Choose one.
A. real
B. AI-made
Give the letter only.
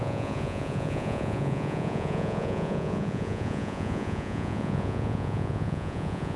B